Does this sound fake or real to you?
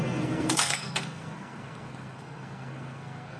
fake